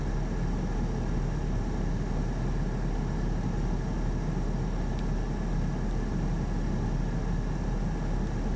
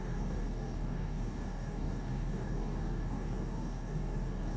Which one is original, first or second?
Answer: first